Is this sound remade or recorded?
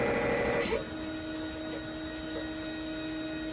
recorded